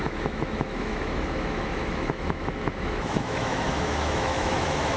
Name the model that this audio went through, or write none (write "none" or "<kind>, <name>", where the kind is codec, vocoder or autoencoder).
autoencoder, DAC-VAE